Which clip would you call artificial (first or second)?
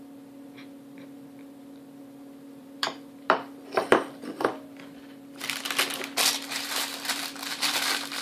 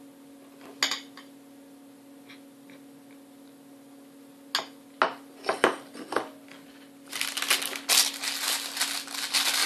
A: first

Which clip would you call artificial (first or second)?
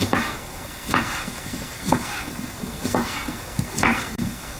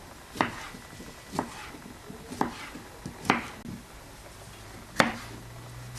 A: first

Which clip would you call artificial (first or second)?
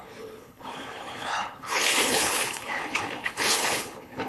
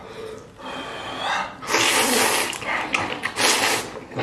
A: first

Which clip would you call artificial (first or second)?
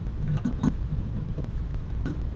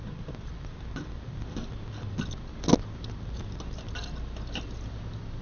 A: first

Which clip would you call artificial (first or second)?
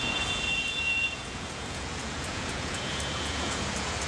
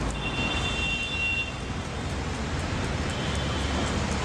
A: first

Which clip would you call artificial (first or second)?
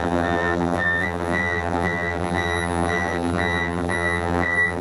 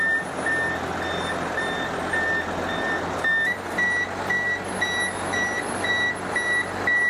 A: first